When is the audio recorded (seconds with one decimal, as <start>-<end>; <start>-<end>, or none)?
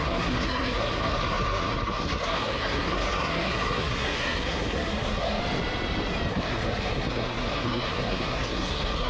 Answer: 5.4-6.3